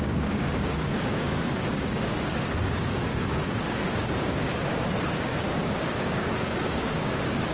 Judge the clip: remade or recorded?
remade